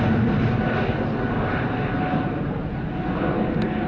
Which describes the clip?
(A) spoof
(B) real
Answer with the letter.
B